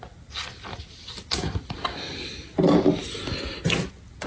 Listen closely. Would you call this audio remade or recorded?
recorded